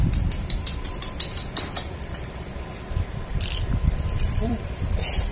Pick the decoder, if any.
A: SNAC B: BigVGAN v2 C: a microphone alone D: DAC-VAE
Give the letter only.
B